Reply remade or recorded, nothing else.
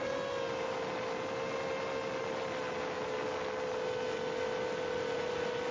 recorded